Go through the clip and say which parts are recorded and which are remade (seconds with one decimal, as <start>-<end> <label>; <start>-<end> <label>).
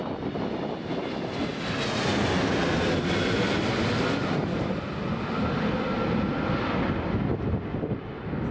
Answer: 0.0-2.1 recorded; 2.1-5.0 remade; 5.0-8.5 recorded